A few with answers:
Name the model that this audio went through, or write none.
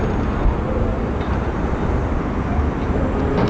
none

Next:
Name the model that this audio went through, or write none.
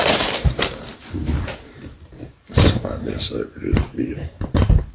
vocoder, BigVGAN v2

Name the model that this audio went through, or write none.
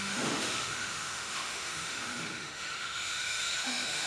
autoencoder, DAC-VAE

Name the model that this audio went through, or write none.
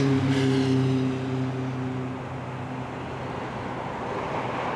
none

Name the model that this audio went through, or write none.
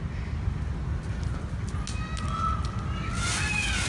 none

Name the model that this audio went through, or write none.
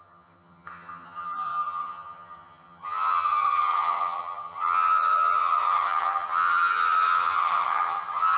vocoder, HiFi-GAN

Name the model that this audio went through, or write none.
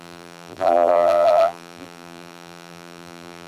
vocoder, BigVGAN v2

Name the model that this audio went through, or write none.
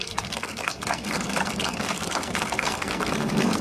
codec, SNAC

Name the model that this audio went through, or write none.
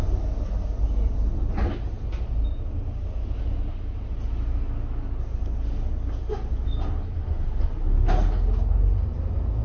none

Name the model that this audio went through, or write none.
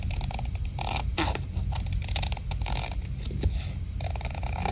none